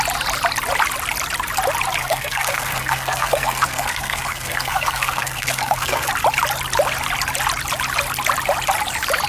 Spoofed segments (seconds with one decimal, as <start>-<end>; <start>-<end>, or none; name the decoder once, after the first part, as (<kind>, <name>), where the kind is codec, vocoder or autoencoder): 2.0-6.1 (codec, SNAC)